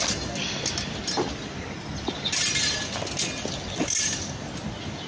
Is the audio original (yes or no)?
yes